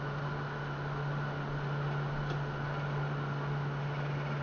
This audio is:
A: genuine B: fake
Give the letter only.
A